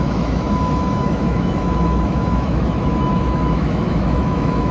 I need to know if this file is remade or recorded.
remade